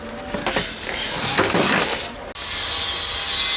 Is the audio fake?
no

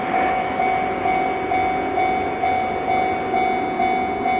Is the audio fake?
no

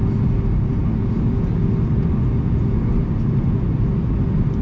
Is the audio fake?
no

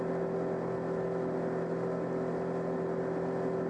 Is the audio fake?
no